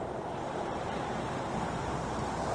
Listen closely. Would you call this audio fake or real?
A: fake